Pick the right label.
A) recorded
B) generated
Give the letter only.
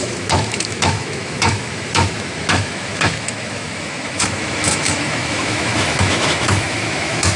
B